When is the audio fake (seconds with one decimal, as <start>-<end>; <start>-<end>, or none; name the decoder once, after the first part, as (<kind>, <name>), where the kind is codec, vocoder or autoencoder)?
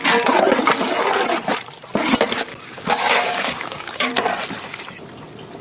2.5-4.1 (codec, DAC)